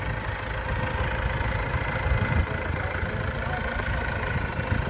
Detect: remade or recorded recorded